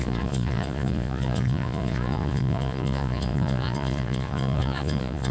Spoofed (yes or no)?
yes